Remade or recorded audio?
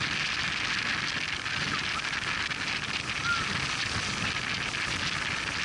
recorded